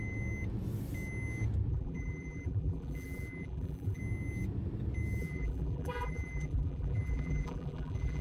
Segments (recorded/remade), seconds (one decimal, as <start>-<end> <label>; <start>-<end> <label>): 0.0-1.7 recorded; 1.7-4.0 remade; 4.0-5.2 recorded; 5.2-8.2 remade